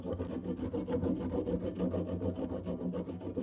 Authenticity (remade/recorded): recorded